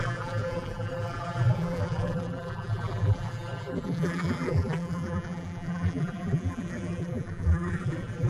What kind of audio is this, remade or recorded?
remade